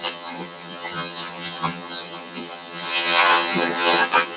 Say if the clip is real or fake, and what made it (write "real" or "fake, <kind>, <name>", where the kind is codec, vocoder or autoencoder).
fake, vocoder, HiFi-GAN